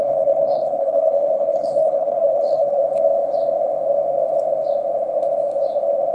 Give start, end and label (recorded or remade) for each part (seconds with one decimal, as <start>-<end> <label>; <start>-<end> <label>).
0.0-2.8 remade; 2.8-6.1 recorded